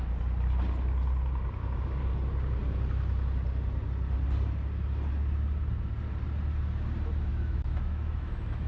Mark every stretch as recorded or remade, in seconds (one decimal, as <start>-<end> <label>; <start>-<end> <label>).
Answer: 0.0-7.3 recorded; 7.3-8.7 remade